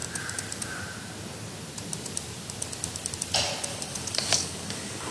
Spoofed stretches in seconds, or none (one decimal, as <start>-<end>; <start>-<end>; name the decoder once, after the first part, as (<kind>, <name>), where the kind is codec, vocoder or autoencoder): 3.7-5.1 (codec, DAC)